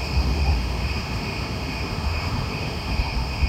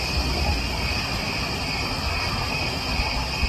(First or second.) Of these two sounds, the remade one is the first